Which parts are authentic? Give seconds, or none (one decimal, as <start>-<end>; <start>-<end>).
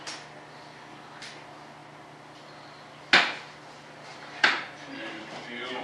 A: 0.0-4.1; 5.2-5.8